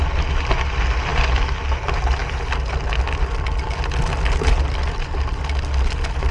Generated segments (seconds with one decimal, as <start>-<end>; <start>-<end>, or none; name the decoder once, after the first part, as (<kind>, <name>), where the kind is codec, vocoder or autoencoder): none